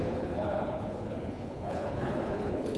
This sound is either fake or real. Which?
fake